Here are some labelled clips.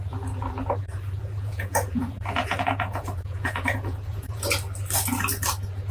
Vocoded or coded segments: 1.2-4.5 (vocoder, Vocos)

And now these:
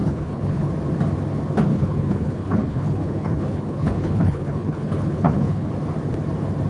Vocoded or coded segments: 0.0-0.7 (codec, HILCodec); 1.7-5.7

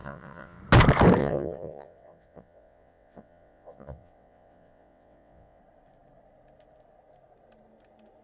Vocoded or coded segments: 0.0-0.6 (vocoder, WaveNeXt); 1.2-5.6

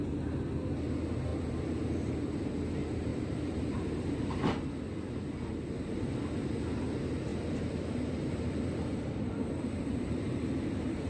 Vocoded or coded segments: 3.1-4.6 (vocoder, BigVGAN v2); 7.3-11.1